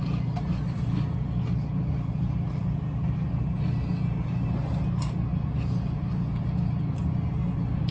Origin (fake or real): real